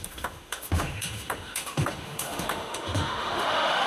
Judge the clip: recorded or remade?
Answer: remade